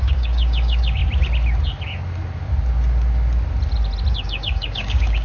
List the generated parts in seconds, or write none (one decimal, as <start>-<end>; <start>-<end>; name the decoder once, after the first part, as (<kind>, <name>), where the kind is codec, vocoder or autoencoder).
0.0-1.0 (codec, DAC); 4.1-5.2